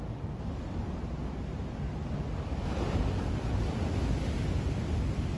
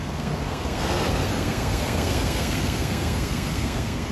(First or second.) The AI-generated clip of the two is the second